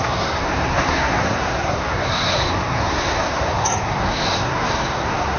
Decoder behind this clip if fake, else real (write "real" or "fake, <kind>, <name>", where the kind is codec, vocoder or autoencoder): fake, codec, SNAC